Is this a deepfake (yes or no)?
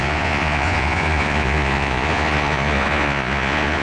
yes